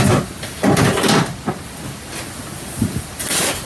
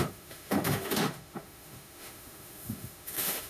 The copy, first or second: second